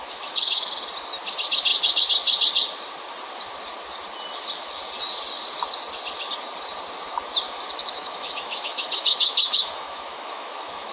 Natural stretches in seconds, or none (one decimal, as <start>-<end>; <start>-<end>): 0.7-7.8